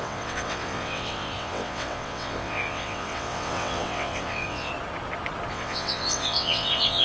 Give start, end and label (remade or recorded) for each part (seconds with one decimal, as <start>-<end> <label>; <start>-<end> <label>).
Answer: 0.0-4.7 remade; 4.7-5.5 recorded; 5.5-7.0 remade